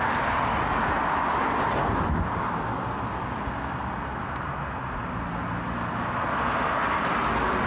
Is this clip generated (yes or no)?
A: no